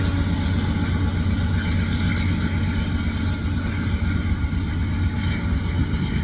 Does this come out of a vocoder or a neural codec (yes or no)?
no